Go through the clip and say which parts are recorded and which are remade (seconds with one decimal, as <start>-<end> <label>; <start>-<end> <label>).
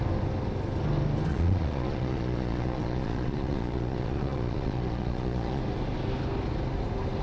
0.0-1.3 recorded; 1.3-5.6 remade; 5.6-7.2 recorded